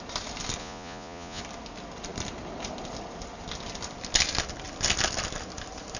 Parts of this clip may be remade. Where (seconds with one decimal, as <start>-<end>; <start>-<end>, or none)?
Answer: 0.6-1.4